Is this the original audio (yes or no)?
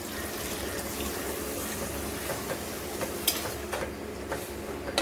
yes